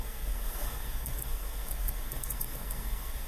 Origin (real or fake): fake